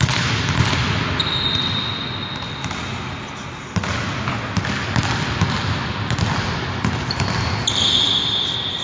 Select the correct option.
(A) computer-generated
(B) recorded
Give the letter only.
B